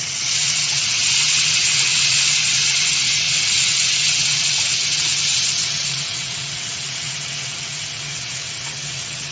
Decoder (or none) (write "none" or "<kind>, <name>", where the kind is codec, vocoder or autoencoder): vocoder, WaveNeXt